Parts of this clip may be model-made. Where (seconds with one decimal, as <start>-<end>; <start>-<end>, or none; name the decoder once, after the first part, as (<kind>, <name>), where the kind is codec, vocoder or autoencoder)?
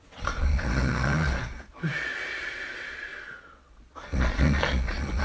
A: 0.0-1.9 (vocoder, Vocos); 2.4-5.2